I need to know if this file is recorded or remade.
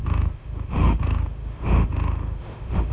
remade